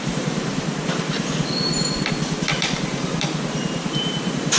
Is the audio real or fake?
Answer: fake